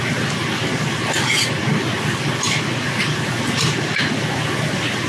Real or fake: real